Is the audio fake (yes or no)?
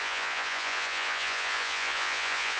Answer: yes